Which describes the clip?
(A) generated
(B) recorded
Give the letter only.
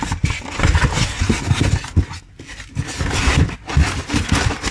B